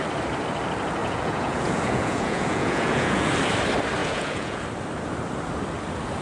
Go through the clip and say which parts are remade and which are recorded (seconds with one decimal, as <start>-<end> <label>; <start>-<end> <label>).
0.0-1.0 recorded; 1.0-3.3 remade; 3.3-4.0 recorded; 4.0-4.6 remade; 4.6-6.2 recorded

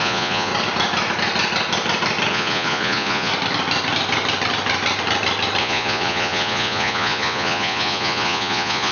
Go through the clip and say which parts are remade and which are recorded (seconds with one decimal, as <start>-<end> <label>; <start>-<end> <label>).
0.0-0.5 remade; 0.5-2.3 recorded; 2.3-3.3 remade; 3.3-5.6 recorded; 5.6-8.9 remade

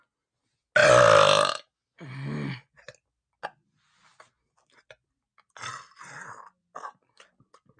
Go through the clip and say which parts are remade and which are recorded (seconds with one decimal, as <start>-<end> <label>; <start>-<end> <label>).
0.0-7.8 recorded

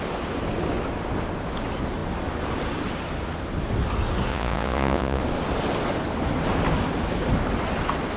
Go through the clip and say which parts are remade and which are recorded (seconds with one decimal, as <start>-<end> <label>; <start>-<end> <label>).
0.0-4.3 recorded; 4.3-5.2 remade; 5.2-8.2 recorded

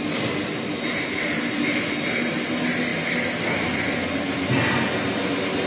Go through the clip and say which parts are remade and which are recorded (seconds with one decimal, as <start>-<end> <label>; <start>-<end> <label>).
0.0-5.7 recorded

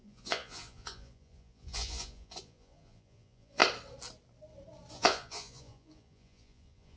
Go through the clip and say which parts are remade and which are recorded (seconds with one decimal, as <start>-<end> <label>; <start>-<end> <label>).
0.0-3.6 remade; 3.6-4.9 recorded; 4.9-7.0 remade

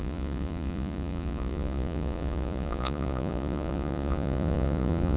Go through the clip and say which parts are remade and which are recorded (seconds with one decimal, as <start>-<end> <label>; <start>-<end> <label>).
0.0-5.2 remade

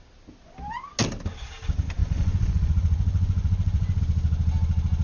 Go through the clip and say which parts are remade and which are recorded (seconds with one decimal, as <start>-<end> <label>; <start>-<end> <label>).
0.0-2.0 recorded; 2.0-4.0 remade; 4.0-5.0 recorded